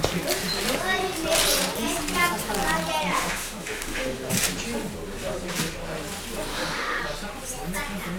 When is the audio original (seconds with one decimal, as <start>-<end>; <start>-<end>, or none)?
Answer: 0.0-3.1; 4.3-6.5; 7.0-8.2